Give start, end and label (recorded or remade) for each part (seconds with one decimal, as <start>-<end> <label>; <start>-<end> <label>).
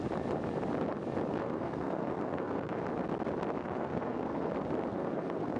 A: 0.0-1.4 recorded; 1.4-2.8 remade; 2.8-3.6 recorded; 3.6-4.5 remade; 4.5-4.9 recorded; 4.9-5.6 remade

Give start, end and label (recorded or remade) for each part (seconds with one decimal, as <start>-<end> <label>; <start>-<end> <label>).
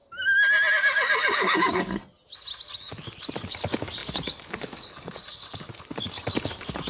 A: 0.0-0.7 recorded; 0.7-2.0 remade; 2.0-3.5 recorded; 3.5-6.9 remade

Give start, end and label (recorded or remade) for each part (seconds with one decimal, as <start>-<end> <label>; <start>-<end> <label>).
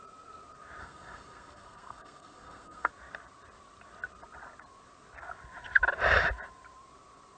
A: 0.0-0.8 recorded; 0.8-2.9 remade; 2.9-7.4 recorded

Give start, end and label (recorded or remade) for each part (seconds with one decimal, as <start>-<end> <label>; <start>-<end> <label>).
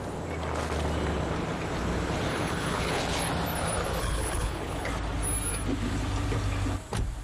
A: 0.0-2.3 recorded; 2.3-3.0 remade; 3.0-4.0 recorded; 4.0-4.9 remade; 4.9-7.2 recorded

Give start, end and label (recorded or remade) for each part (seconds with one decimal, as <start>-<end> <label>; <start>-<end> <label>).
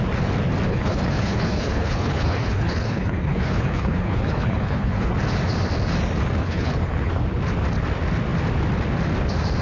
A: 0.0-0.7 recorded; 0.7-5.1 remade; 5.1-6.4 recorded; 6.4-7.1 remade; 7.1-9.6 recorded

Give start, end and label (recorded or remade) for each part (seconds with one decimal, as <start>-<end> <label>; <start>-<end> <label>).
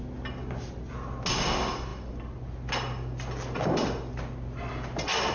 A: 0.0-5.3 recorded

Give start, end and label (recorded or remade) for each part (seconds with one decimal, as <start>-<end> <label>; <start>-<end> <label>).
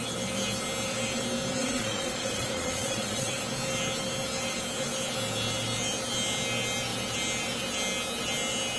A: 0.0-1.6 recorded; 1.6-3.4 remade; 3.4-8.8 recorded